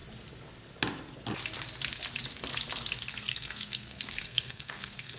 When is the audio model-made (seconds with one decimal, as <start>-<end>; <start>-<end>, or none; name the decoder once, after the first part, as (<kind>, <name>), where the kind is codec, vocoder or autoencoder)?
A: 3.1-5.2 (codec, SNAC)

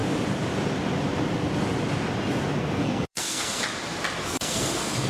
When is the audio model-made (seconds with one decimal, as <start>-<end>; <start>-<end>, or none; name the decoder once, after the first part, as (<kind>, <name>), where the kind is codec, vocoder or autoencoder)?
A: 2.6-3.6 (codec, SNAC); 4.2-5.1

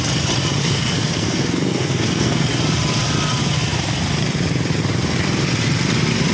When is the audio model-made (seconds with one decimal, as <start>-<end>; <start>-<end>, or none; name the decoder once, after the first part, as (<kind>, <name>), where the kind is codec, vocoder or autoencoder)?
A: 0.6-2.5 (codec, SNAC)

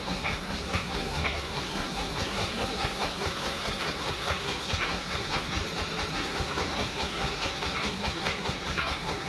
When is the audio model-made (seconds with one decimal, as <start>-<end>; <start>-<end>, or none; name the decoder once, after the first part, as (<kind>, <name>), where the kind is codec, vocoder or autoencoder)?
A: 0.0-5.6 (codec, SNAC); 6.1-9.3